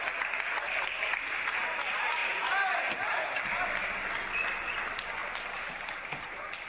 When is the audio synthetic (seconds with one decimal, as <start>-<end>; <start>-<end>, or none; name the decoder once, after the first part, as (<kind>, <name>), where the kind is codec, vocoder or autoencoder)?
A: 5.2-6.1 (vocoder, BigVGAN v2)